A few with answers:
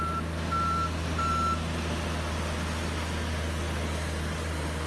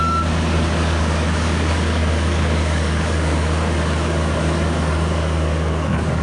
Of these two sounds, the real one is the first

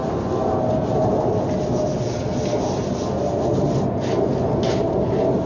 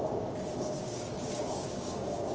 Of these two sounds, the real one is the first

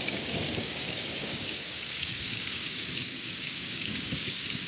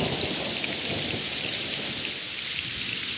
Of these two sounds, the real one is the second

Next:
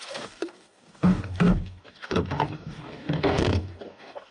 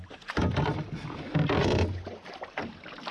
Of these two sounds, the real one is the second